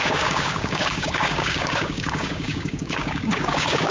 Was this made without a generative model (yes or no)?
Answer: no